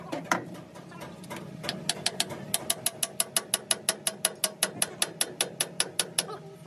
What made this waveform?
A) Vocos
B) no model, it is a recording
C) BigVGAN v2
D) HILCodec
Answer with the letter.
B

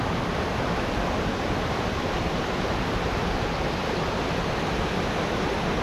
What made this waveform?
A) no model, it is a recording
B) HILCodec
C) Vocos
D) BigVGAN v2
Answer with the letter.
A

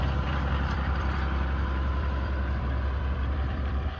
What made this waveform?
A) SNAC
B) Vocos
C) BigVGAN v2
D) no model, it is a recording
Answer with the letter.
C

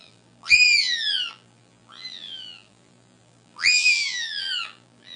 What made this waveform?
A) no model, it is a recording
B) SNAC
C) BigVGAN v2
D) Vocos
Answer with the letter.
C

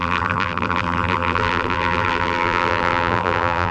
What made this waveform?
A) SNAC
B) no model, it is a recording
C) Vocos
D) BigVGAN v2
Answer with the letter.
D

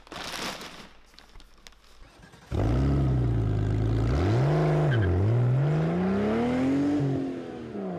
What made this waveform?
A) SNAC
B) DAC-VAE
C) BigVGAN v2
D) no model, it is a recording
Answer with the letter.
D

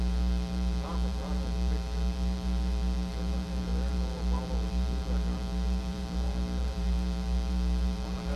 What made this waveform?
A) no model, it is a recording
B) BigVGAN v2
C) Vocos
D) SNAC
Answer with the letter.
B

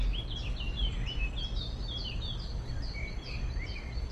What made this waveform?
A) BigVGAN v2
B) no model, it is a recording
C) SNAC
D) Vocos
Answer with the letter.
A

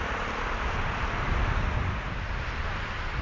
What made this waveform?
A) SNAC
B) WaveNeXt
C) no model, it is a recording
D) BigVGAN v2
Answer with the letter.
C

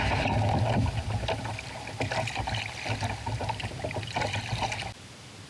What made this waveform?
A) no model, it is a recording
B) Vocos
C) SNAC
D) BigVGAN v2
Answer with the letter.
A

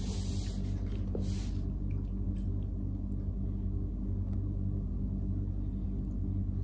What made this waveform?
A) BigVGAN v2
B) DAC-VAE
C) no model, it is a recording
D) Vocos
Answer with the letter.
C